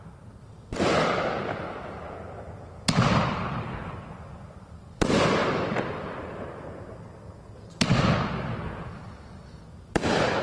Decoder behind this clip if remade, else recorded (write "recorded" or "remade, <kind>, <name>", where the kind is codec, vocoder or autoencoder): recorded